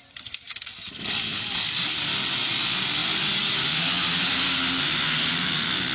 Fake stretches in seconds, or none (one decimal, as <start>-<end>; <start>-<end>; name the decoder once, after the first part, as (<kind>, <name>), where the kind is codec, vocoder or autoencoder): none